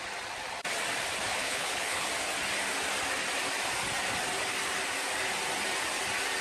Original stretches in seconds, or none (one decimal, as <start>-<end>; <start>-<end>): 0.0-1.3; 2.1-6.4